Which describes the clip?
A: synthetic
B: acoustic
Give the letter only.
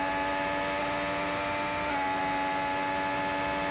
B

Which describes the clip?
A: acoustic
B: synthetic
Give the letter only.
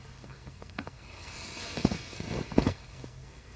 B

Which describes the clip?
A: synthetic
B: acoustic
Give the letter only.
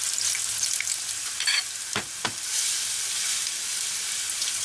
B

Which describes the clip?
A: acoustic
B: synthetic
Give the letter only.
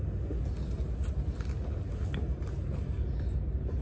A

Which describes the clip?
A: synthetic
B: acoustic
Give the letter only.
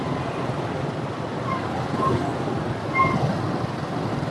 B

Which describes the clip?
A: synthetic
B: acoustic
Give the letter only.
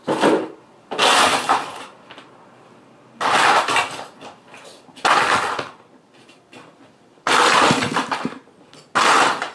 B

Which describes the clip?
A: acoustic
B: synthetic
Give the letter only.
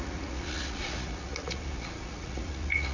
B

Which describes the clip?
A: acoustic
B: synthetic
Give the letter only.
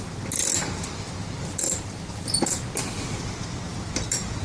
A